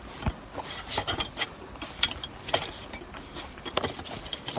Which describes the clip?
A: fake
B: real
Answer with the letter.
B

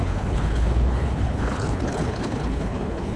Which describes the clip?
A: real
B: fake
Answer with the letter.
B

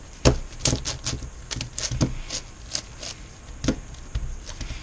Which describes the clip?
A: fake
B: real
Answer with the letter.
B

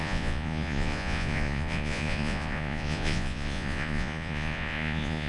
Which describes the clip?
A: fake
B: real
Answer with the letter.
A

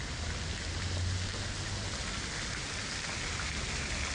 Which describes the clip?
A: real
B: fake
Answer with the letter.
A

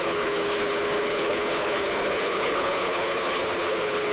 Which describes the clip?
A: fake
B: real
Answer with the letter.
A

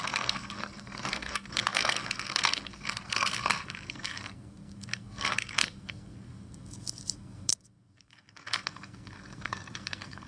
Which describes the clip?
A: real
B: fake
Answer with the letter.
B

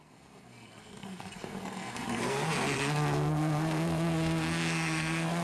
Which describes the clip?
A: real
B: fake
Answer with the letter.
B